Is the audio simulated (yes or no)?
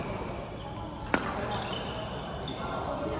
no